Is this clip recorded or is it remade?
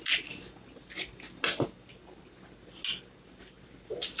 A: recorded